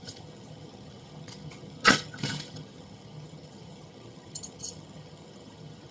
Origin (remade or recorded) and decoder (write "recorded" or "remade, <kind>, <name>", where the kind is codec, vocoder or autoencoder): remade, vocoder, HiFi-GAN